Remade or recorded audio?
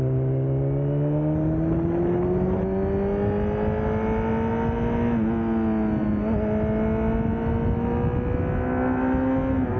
recorded